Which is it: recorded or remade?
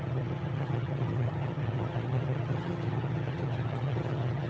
remade